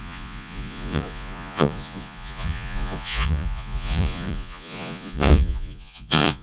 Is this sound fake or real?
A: fake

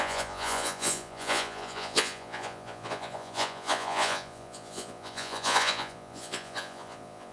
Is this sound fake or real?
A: fake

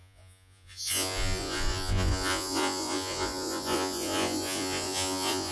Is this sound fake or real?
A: fake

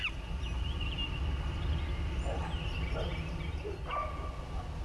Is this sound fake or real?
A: real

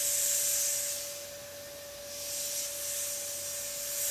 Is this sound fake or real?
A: real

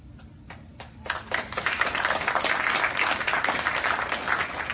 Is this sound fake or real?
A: real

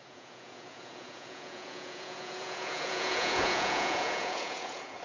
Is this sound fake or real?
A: fake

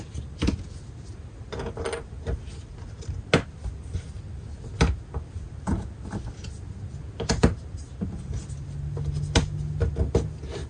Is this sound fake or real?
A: real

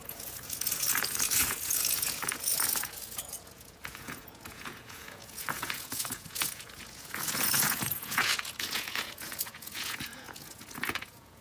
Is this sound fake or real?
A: fake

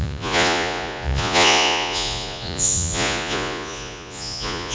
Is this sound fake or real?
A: fake